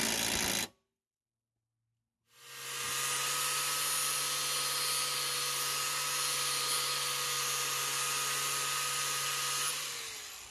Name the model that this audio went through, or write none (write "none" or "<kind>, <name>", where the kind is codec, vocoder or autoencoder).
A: none